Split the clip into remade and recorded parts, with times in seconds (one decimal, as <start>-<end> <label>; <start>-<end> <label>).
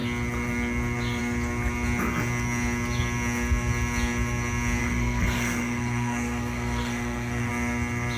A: 0.0-4.8 recorded; 4.8-7.5 remade; 7.5-8.2 recorded